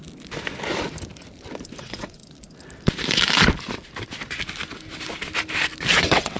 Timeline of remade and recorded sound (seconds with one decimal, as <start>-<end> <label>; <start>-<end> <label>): 0.0-1.8 recorded; 1.8-2.2 remade; 2.2-6.0 recorded; 6.0-6.4 remade